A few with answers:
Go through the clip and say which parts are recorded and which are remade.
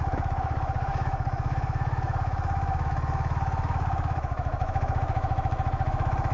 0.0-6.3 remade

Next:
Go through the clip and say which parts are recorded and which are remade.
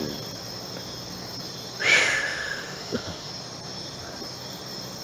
0.0-2.1 recorded; 2.1-3.3 remade; 3.3-5.0 recorded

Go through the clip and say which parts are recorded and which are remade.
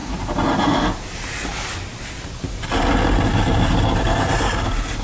0.0-5.0 recorded